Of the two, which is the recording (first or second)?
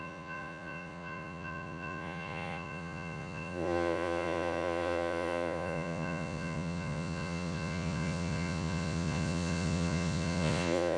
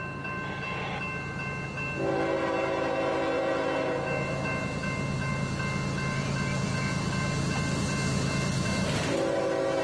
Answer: second